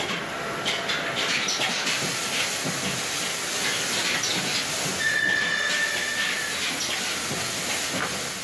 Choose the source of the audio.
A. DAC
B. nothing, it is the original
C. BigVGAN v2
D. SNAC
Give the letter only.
B